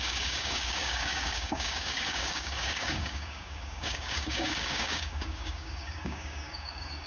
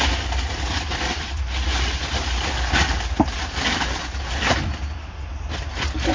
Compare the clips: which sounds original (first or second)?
second